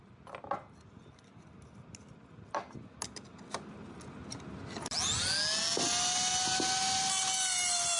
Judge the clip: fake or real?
real